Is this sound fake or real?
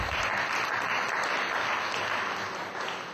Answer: real